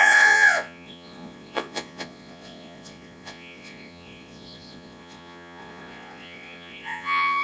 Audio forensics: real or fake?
fake